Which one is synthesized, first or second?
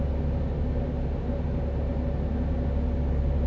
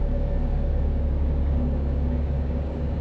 second